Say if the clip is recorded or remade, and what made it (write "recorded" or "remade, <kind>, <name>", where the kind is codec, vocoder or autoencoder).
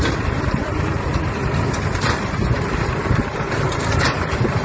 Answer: remade, vocoder, BigVGAN v2